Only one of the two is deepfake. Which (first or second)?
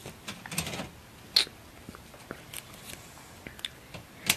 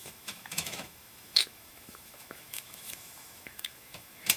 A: second